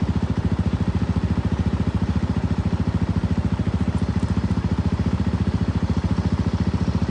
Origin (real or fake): real